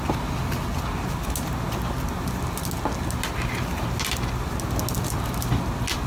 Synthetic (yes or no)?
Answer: no